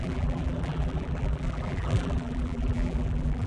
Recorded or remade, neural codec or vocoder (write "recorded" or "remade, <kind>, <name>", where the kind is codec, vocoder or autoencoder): remade, vocoder, BigVGAN v2